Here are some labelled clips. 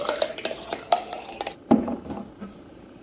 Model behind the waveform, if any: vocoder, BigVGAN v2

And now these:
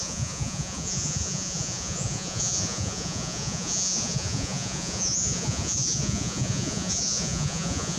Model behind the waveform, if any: vocoder, Vocos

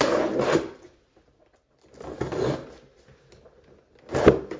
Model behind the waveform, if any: none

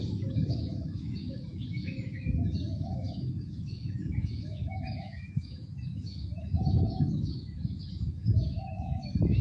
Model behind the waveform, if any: autoencoder, DAC-VAE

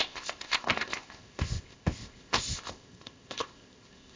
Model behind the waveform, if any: codec, ZipCodec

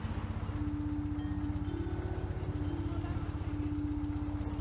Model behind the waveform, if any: none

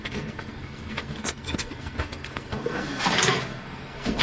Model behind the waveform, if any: codec, SNAC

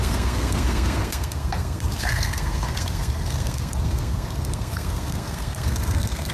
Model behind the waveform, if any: codec, SNAC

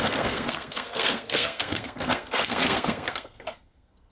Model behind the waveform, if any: codec, SNAC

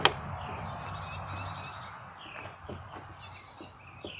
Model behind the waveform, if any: none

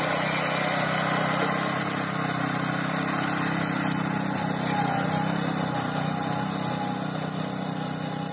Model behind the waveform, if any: none